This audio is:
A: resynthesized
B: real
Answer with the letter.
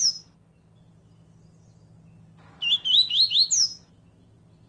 B